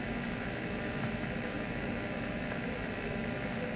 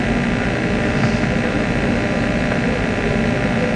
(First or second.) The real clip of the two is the second